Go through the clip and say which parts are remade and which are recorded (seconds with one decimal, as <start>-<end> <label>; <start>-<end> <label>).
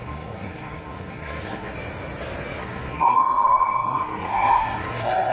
0.0-1.7 remade; 1.7-2.6 recorded; 2.6-5.3 remade